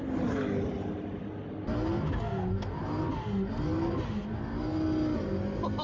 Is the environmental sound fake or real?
real